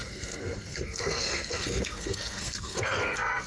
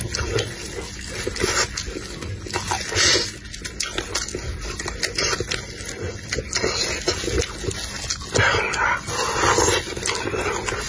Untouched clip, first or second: second